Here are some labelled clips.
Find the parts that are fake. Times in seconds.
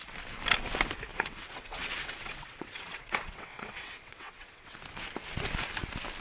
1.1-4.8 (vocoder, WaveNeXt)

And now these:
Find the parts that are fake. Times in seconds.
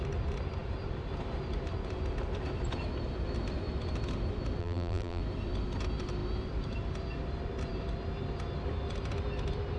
4.6-5.2 (vocoder, BigVGAN v2)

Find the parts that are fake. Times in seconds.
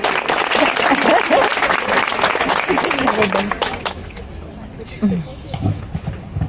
3.6-4.2 (autoencoder, DAC-VAE); 5.3-5.8